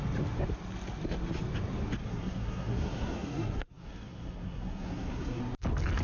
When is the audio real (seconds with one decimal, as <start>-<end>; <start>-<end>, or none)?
0.0-2.0; 5.4-6.0